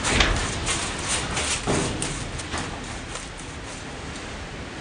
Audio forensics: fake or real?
real